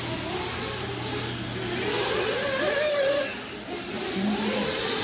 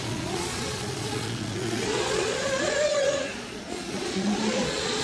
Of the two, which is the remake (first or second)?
second